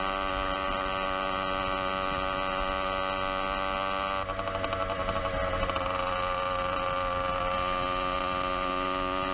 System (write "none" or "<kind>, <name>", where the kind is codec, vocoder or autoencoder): none